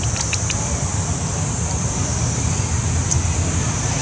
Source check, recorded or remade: recorded